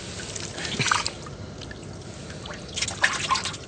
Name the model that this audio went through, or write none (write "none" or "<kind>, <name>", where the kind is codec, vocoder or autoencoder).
none